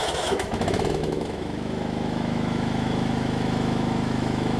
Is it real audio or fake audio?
fake